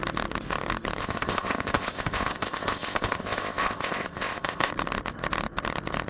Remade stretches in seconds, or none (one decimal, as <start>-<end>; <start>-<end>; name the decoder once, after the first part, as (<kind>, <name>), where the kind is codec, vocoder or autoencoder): 1.0-4.7 (codec, ZipCodec)